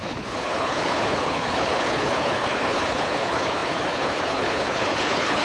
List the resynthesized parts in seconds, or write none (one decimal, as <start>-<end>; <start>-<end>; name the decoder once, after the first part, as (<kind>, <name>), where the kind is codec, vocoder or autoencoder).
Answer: 0.0-5.4 (codec, HILCodec)